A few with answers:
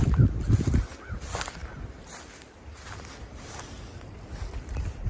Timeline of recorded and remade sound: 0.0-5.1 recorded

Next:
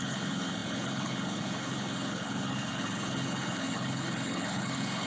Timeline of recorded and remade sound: 0.0-5.1 remade

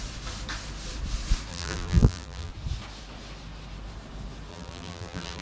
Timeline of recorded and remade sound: 0.0-1.5 recorded; 1.5-2.5 remade; 2.5-4.5 recorded; 4.5-5.4 remade

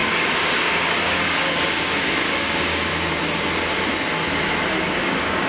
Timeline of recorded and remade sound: 0.0-2.9 remade; 2.9-4.8 recorded; 4.8-5.5 remade

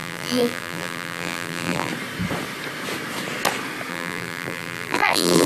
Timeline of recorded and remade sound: 0.0-1.9 remade; 1.9-3.9 recorded; 3.9-5.5 remade

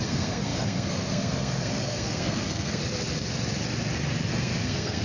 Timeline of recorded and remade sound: 0.0-2.8 remade; 2.8-4.3 recorded; 4.3-5.0 remade